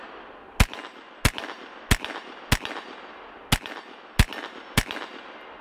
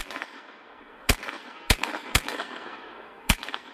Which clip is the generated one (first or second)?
second